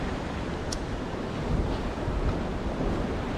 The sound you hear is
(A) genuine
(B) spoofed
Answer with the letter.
A